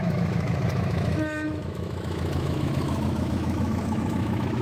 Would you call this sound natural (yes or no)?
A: no